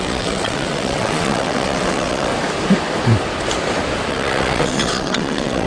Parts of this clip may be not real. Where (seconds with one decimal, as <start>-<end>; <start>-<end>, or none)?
0.0-2.3; 4.1-5.7